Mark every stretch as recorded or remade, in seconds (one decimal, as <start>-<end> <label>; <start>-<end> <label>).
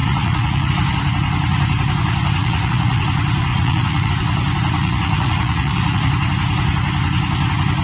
0.0-0.7 remade; 0.7-2.4 recorded; 2.4-3.0 remade; 3.0-3.5 recorded; 3.5-4.1 remade; 4.1-4.8 recorded; 4.8-6.1 remade; 6.1-7.8 recorded